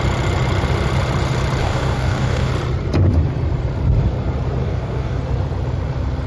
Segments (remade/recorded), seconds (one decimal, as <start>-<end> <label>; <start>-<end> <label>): 0.0-1.6 recorded; 1.6-2.5 remade; 2.5-4.6 recorded; 4.6-5.2 remade; 5.2-6.3 recorded